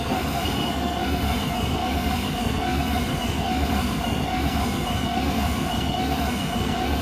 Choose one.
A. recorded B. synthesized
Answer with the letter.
B